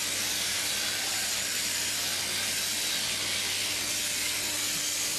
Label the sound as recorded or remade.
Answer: remade